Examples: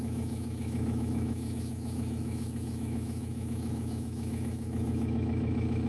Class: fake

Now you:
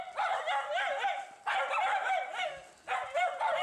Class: real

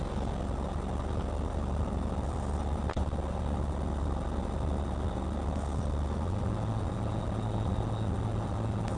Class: real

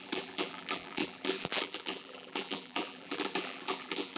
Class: fake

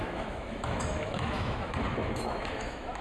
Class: fake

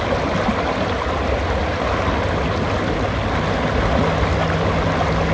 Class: real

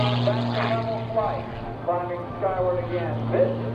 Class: real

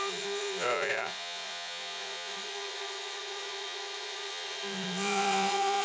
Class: fake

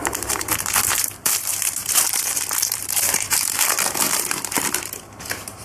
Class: fake